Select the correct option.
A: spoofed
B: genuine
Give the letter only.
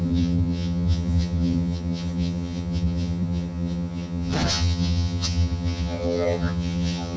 A